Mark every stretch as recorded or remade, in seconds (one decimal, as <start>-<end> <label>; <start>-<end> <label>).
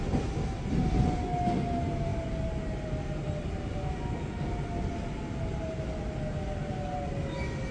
0.0-7.7 recorded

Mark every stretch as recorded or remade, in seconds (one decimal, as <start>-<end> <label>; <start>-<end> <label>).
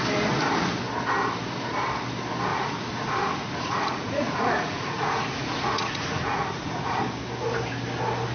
0.0-2.5 recorded; 2.5-7.0 remade; 7.0-8.3 recorded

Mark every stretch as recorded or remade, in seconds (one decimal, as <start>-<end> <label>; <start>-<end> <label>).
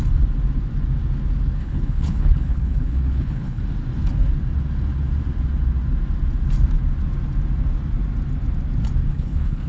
0.0-1.6 recorded; 1.6-3.6 remade; 3.6-9.1 recorded; 9.1-9.7 remade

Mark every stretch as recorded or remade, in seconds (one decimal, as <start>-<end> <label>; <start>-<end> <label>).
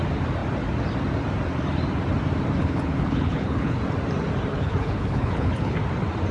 0.0-2.6 recorded; 2.6-3.8 remade; 3.8-4.5 recorded; 4.5-5.8 remade; 5.8-6.3 recorded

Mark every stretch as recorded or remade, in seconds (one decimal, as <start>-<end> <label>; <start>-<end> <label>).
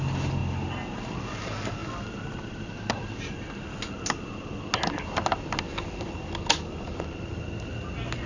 0.0-8.3 recorded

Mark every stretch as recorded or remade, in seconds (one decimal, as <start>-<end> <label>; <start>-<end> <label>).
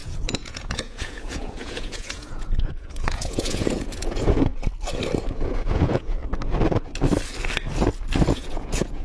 0.0-4.5 remade; 4.5-5.3 recorded; 5.3-6.2 remade; 6.2-8.3 recorded; 8.3-9.0 remade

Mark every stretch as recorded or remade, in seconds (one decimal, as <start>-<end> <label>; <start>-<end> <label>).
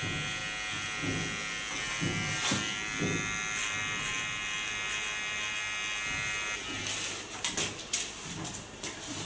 0.0-9.3 recorded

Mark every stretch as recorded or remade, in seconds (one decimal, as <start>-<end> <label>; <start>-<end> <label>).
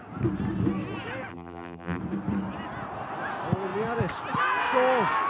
0.0-1.3 recorded; 1.3-2.0 remade; 2.0-5.3 recorded